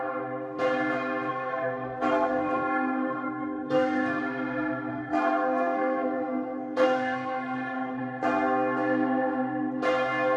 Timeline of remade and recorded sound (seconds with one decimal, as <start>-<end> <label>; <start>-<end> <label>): 0.0-1.3 recorded; 1.3-4.2 remade; 4.2-4.9 recorded; 4.9-8.0 remade; 8.0-10.4 recorded